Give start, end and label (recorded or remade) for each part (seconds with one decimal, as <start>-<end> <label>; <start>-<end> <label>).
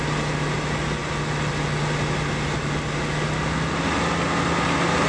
0.0-5.1 recorded